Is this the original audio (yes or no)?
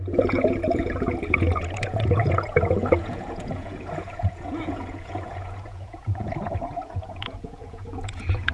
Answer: no